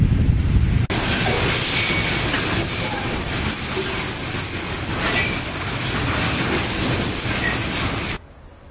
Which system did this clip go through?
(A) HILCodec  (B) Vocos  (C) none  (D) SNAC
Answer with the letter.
C